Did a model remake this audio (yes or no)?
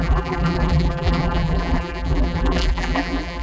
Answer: yes